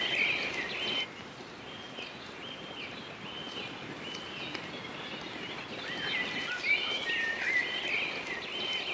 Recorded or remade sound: recorded